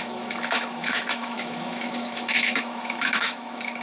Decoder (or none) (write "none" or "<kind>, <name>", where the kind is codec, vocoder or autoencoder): autoencoder, DAC-VAE